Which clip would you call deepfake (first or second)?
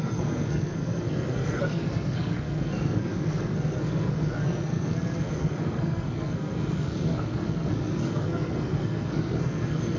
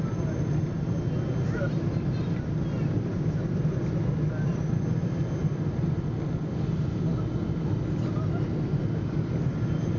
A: first